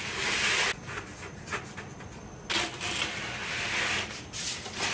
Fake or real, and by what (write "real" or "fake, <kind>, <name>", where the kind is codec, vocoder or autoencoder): real